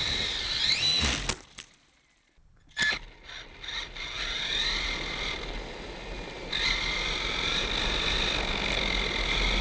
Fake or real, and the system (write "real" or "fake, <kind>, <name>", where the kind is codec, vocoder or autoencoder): real